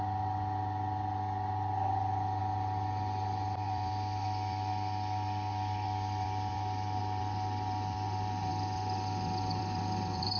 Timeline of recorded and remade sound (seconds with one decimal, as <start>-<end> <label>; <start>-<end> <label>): 0.0-10.4 recorded